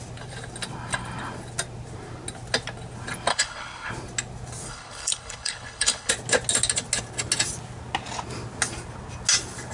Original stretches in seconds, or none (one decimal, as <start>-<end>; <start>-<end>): 0.0-3.3; 3.9-4.7; 6.1-9.7